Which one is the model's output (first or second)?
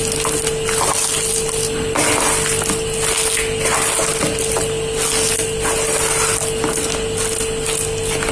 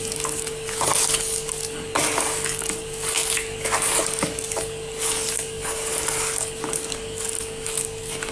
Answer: second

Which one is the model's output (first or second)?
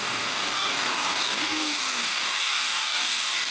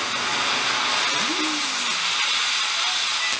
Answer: first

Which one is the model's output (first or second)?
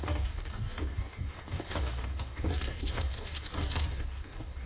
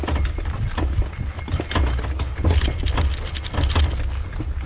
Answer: first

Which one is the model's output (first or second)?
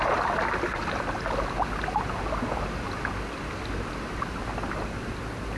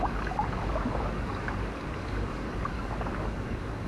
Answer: second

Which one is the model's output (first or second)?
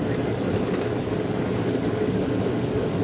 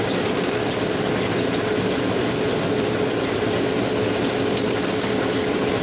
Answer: first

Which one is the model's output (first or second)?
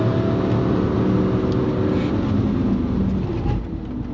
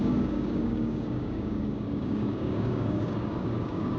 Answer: second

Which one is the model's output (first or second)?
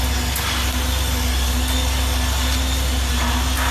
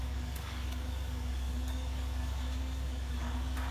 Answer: second